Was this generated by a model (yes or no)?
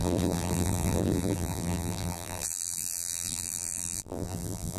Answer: yes